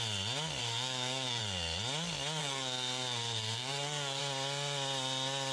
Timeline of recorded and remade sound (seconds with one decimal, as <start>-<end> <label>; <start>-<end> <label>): 0.0-0.6 recorded; 0.6-1.4 remade; 1.4-2.4 recorded; 2.4-4.2 remade; 4.2-5.5 recorded